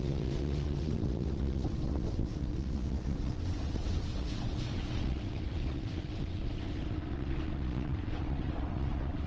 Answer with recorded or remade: remade